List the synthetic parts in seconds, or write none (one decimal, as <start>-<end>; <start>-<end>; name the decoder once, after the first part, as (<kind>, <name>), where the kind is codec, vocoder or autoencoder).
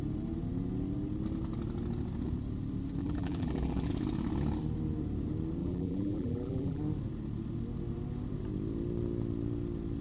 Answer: 3.0-3.9 (vocoder, BigVGAN v2); 5.6-6.8